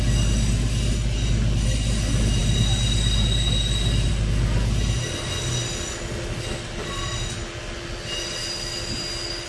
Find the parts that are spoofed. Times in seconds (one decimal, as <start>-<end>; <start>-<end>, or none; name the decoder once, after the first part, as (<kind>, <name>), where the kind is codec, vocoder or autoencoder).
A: none